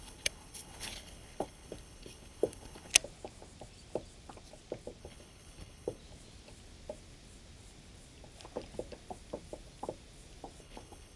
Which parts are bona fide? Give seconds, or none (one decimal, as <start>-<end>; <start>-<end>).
2.9-5.0; 6.0-10.6